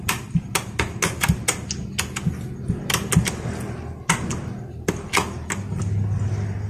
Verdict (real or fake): real